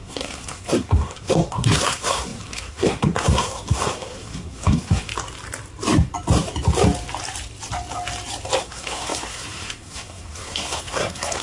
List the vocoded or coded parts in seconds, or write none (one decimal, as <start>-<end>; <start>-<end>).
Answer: 0.0-5.1; 8.6-11.4